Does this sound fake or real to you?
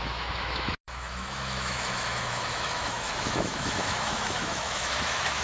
fake